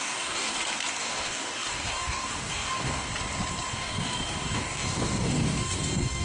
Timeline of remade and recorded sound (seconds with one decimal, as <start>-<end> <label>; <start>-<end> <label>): 0.0-0.5 remade; 0.5-1.0 recorded; 1.0-3.1 remade; 3.1-3.7 recorded; 3.7-6.2 remade